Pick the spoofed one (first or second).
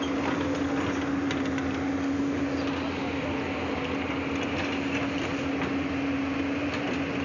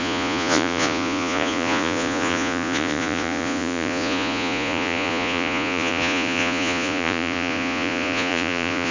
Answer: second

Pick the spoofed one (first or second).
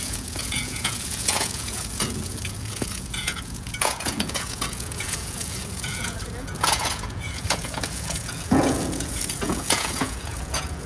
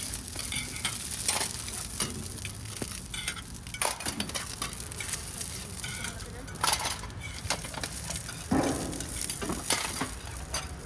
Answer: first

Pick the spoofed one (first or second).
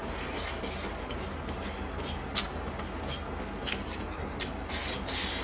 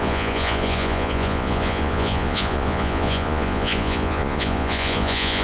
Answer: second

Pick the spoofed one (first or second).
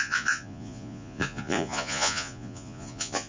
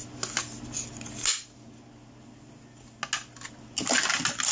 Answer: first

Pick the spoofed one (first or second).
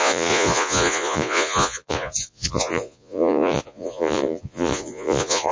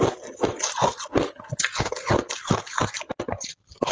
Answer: first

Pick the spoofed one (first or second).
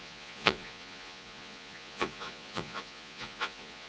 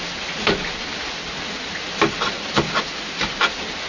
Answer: first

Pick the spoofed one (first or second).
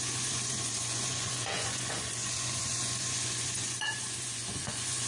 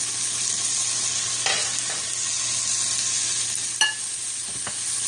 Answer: first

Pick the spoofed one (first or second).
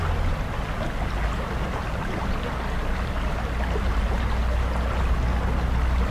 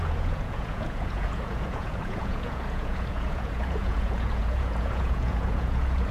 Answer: second